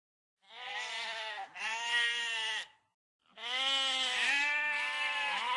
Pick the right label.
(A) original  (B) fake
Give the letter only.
A